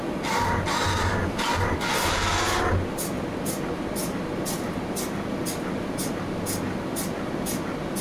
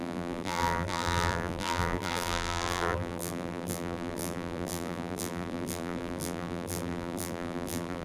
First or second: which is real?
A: first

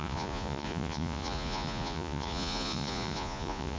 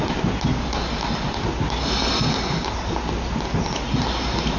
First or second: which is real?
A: second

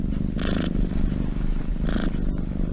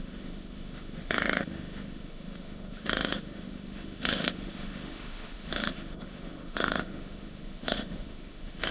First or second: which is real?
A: first